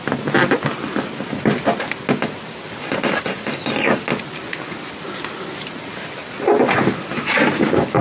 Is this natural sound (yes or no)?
yes